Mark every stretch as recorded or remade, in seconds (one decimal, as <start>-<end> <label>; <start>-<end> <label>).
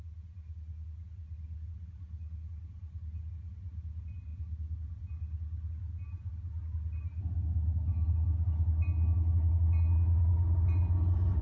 0.0-11.4 recorded